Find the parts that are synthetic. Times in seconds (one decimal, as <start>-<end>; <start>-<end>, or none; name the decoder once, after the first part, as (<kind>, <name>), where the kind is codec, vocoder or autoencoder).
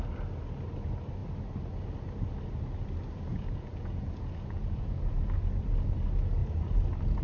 3.3-5.5 (vocoder, Vocos)